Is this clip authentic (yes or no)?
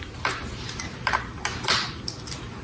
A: yes